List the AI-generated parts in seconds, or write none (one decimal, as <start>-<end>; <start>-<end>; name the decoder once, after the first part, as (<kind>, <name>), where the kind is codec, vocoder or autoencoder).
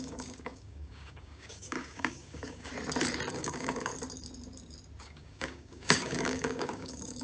0.0-2.7 (codec, DAC); 3.3-3.9; 5.0-7.2